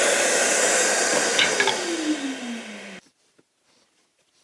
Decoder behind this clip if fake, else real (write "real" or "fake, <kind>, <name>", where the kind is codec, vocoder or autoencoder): real